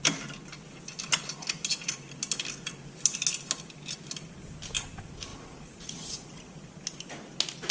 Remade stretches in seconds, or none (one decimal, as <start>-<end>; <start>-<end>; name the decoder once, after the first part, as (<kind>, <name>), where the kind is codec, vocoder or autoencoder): 5.3-6.8 (vocoder, Vocos)